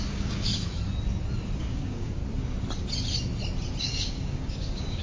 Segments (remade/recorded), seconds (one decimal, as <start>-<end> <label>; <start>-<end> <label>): 0.0-0.5 remade; 0.5-1.6 recorded; 1.6-2.2 remade; 2.2-3.8 recorded; 3.8-5.0 remade